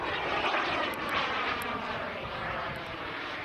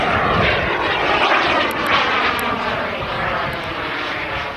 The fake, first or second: first